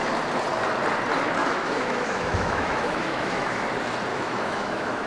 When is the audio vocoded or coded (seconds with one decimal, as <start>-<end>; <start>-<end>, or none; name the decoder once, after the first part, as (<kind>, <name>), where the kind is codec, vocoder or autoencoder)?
1.4-3.5 (autoencoder, DAC-VAE); 4.1-5.1